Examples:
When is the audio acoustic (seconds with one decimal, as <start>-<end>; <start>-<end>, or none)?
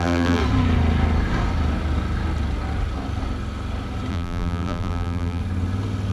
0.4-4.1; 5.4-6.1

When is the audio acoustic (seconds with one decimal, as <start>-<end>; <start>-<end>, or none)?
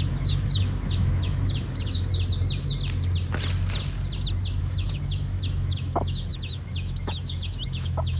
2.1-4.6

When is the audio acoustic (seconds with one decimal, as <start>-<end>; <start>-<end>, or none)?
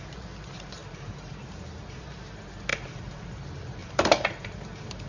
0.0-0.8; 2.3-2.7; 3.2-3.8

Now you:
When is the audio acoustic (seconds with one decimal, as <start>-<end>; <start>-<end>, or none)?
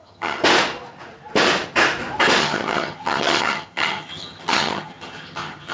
0.4-2.4